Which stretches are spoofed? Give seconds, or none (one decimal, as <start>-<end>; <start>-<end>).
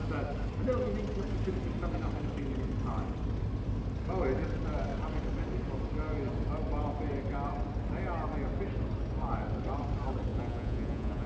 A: 10.3-11.3